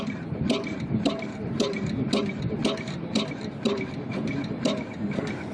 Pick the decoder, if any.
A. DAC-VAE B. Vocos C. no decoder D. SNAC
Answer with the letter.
C